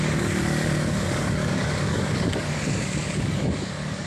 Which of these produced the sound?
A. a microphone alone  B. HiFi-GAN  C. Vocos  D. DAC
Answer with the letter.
D